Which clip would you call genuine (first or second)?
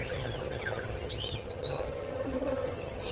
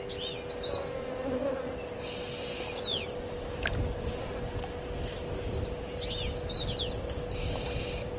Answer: second